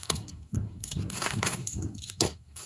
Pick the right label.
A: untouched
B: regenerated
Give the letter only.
B